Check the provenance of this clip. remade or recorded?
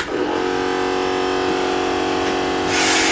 recorded